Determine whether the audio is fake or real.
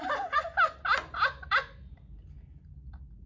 real